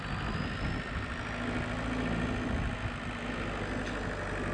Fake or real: real